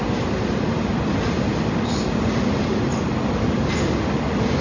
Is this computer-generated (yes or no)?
no